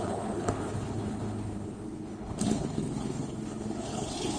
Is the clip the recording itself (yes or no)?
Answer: no